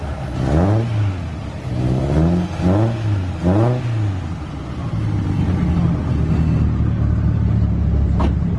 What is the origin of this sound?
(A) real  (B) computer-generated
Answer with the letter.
A